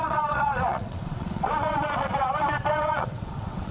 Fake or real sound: fake